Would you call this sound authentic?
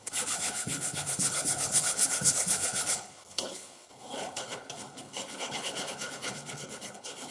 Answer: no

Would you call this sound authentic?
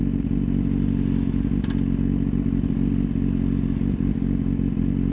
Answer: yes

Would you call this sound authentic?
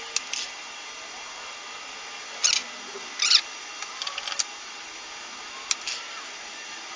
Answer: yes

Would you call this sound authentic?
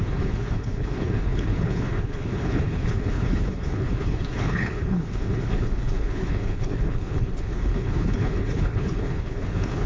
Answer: no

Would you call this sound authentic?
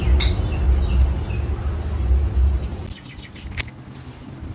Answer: yes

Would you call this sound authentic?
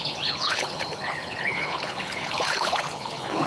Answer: no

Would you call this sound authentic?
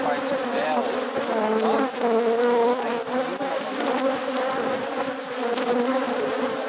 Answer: yes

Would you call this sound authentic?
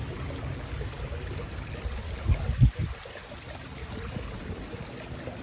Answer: yes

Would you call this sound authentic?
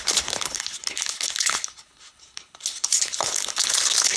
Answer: no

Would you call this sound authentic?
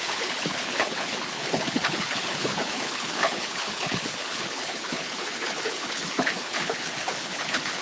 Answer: no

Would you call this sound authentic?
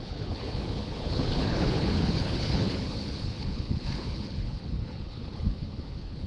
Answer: no